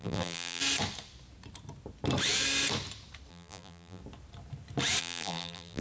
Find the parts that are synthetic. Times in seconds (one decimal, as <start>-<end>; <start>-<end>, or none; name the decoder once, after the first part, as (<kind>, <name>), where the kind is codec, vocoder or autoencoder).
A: 0.0-0.6 (vocoder, BigVGAN v2); 3.3-4.0; 5.0-5.8